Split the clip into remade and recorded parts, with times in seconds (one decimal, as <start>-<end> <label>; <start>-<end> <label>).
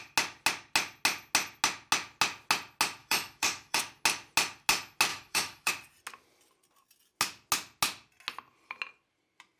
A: 0.0-3.0 recorded; 3.0-3.8 remade; 3.8-5.1 recorded; 5.1-5.7 remade; 5.7-9.6 recorded